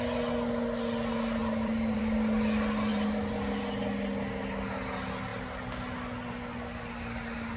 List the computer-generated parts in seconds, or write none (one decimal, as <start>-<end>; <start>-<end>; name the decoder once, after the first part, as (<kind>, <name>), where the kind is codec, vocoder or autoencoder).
1.4-2.0 (vocoder, BigVGAN v2); 2.9-3.5